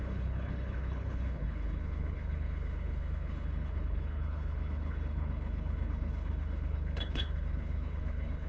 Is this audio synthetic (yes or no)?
yes